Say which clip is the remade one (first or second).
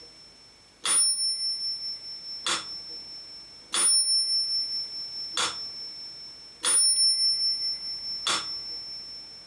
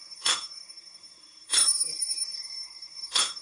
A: second